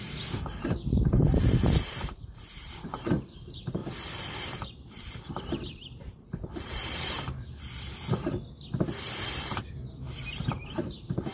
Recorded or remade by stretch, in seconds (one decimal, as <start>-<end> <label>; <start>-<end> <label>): 0.0-3.8 remade; 3.8-4.4 recorded; 4.4-7.5 remade; 7.5-9.5 recorded; 9.5-9.9 remade; 9.9-10.4 recorded; 10.4-11.3 remade